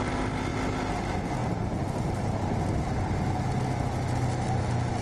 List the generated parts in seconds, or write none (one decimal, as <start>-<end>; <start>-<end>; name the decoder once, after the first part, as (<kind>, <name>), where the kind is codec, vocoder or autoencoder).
1.4-3.0 (vocoder, BigVGAN v2)